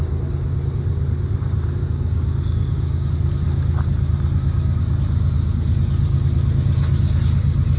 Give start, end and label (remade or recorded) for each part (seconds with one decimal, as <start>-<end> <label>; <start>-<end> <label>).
0.0-1.8 recorded; 1.8-3.1 remade; 3.1-7.8 recorded